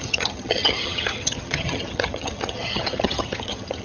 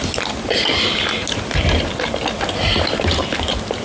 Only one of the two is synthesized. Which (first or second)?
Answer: first